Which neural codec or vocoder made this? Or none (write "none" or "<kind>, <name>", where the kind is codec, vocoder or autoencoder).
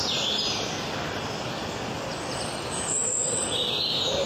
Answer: none